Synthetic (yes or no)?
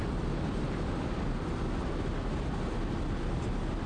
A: no